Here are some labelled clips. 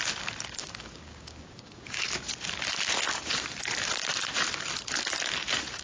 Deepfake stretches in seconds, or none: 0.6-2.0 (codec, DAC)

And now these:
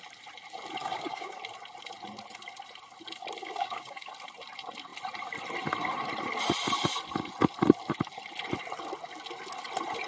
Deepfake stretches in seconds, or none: 0.8-1.4 (codec, DAC); 3.4-4.1